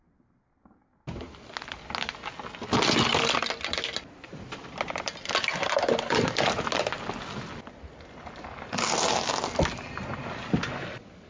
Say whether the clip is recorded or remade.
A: recorded